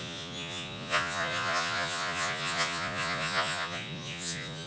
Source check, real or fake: fake